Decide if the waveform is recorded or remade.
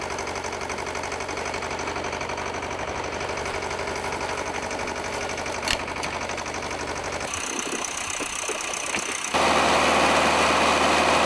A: recorded